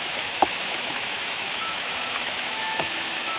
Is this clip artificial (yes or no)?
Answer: yes